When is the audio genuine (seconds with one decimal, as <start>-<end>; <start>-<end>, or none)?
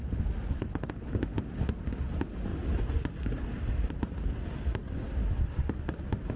0.0-6.4